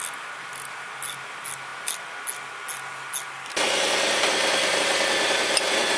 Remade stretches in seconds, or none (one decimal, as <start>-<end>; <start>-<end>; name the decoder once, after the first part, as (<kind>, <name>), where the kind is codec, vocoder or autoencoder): none